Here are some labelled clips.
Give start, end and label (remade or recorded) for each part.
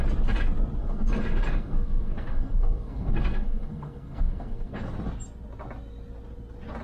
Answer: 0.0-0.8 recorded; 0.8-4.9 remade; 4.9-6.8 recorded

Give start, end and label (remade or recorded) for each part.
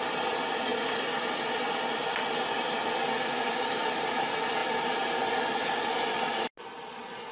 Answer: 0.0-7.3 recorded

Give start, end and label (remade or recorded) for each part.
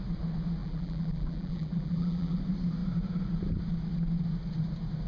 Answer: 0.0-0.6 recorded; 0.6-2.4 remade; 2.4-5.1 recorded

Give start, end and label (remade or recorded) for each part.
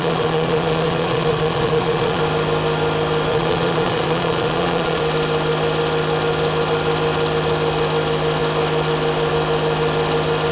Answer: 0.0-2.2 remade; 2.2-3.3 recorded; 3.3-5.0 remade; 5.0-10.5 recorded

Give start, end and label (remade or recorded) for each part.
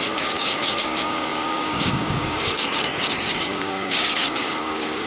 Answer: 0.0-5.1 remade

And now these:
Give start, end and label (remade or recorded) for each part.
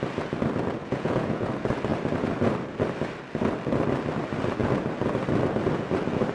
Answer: 0.0-0.8 recorded; 0.8-1.5 remade; 1.5-6.3 recorded